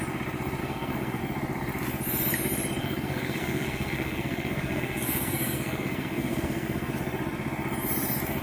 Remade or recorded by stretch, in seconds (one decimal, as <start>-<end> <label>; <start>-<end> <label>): 0.0-0.6 recorded; 0.6-1.2 remade; 1.2-2.8 recorded; 2.8-6.9 remade; 6.9-8.4 recorded